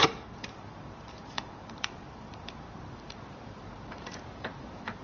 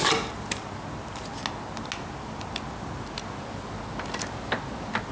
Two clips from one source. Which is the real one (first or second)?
second